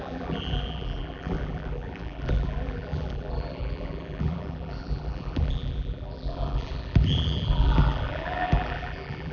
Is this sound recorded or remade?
remade